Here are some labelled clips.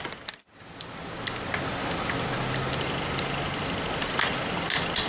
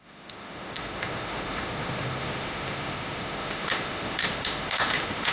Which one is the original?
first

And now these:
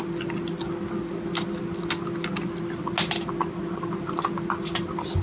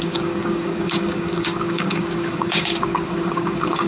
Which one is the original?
first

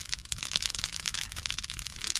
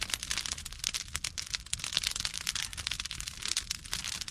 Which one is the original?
second